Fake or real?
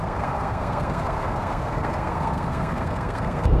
fake